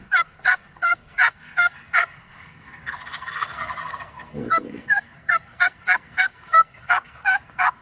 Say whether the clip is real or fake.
fake